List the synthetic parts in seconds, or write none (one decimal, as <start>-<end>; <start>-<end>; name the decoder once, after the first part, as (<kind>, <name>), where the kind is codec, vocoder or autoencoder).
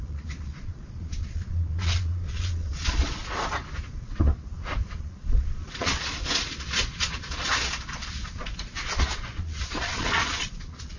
0.0-3.2 (vocoder, Vocos); 3.9-4.3; 4.9-11.0